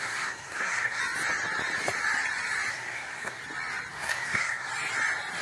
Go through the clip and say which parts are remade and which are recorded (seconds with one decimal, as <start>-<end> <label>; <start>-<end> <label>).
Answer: 0.0-1.0 remade; 1.0-2.7 recorded; 2.7-3.4 remade; 3.4-3.9 recorded; 3.9-4.7 remade; 4.7-5.4 recorded